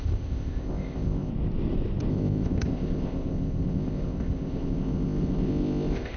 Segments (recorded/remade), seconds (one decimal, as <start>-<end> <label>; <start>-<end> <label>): 0.0-1.3 remade; 1.3-2.1 recorded; 2.1-6.2 remade